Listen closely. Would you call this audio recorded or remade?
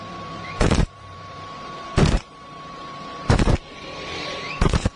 remade